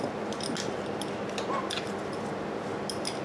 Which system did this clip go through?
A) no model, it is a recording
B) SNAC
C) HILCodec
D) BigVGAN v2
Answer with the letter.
A